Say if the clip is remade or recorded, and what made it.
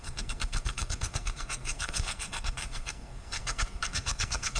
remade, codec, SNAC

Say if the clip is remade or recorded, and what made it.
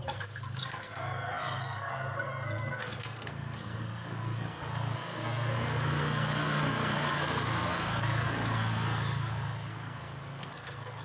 remade, codec, SNAC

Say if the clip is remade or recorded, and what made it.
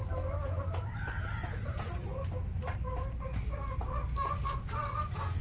recorded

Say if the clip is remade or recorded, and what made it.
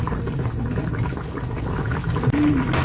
recorded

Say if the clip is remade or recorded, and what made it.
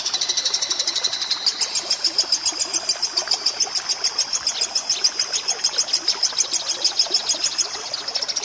recorded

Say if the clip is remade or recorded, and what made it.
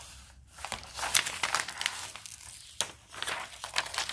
recorded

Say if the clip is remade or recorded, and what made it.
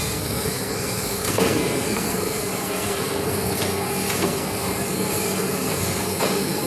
remade, codec, SNAC